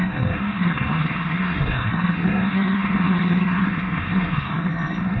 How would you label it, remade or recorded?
remade